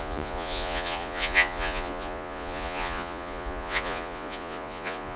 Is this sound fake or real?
fake